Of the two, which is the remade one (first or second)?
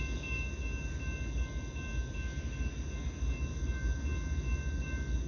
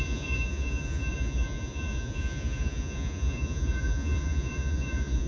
second